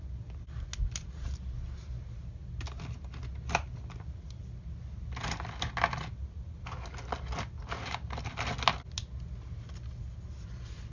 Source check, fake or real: real